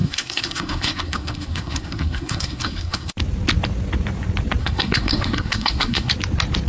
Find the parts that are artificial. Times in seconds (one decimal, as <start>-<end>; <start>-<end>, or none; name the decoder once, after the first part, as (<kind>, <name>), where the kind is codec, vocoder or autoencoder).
0.0-3.1 (codec, SNAC); 4.6-6.1